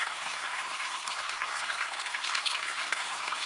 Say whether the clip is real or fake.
fake